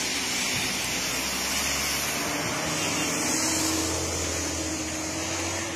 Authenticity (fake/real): real